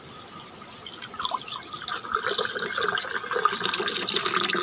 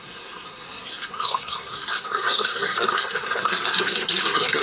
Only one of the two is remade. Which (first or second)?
second